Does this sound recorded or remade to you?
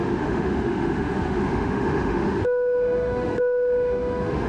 remade